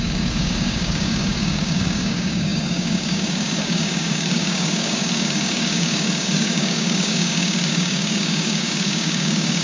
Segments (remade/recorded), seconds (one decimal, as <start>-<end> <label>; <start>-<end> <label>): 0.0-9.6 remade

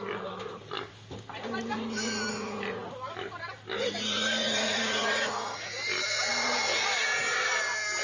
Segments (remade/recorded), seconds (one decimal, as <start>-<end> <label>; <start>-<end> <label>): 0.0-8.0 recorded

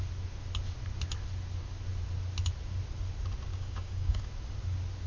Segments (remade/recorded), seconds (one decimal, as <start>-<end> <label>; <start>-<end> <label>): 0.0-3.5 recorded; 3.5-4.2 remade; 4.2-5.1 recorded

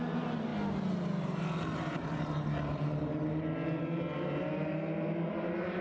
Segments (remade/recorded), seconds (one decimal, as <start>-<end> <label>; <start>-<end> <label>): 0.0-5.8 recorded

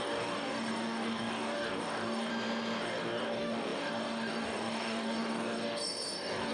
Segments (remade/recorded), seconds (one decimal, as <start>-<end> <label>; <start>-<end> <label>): 0.0-2.3 remade; 2.3-2.8 recorded; 2.8-6.5 remade